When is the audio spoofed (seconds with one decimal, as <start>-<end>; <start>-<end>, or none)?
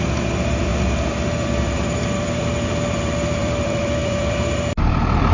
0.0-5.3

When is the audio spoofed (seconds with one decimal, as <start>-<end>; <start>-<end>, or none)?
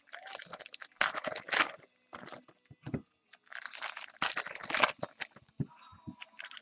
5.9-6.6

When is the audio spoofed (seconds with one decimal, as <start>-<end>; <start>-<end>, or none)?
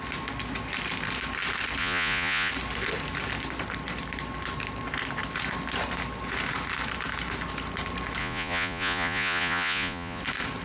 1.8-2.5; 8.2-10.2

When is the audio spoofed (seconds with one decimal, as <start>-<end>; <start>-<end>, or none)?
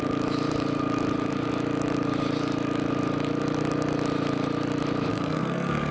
5.1-5.9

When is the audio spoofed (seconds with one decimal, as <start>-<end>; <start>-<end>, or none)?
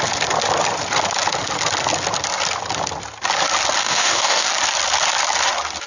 3.8-4.5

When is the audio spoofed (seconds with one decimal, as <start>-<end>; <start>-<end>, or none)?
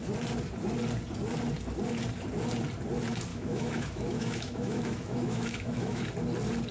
3.3-6.0